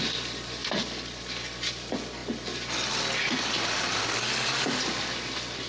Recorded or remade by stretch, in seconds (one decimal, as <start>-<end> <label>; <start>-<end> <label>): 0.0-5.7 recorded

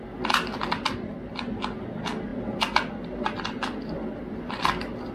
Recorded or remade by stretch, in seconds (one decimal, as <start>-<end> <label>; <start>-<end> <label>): 0.0-5.1 recorded

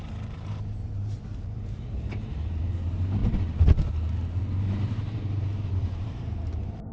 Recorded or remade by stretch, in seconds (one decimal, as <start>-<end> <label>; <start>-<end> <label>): 0.0-3.2 remade; 3.2-4.6 recorded; 4.6-6.9 remade